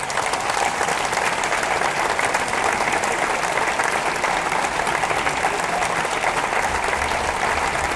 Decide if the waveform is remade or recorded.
recorded